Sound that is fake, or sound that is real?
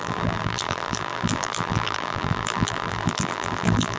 fake